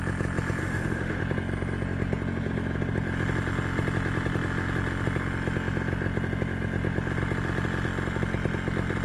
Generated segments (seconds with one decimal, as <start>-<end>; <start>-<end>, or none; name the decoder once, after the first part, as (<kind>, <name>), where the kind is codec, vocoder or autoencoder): 0.6-1.2 (autoencoder, DAC-VAE)